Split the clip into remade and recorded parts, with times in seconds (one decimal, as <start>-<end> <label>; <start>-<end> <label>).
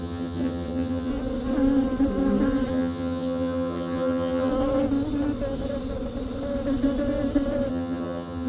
0.0-1.1 remade; 1.1-2.7 recorded; 2.7-4.5 remade; 4.5-7.7 recorded; 7.7-8.5 remade